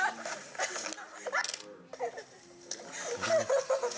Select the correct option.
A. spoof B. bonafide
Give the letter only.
B